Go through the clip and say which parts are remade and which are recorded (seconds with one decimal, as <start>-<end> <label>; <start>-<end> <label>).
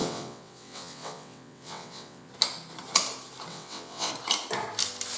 0.0-2.3 remade; 2.3-3.5 recorded; 3.5-4.1 remade; 4.1-5.2 recorded